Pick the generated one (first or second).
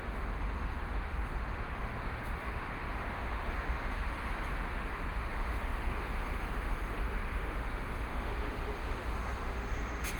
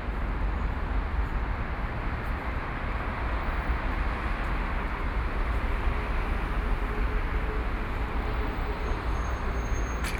first